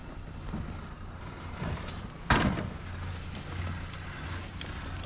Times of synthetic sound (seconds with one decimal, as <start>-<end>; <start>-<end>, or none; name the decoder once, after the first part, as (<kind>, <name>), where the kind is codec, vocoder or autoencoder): none